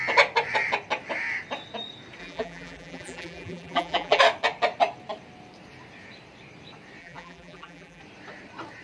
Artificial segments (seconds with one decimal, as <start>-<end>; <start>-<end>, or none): 2.2-4.2; 7.0-8.0